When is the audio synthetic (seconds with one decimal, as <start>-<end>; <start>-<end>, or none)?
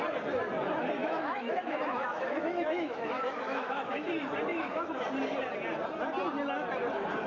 1.0-4.1; 4.5-5.0